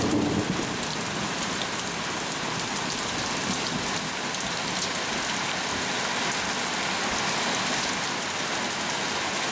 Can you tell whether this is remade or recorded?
recorded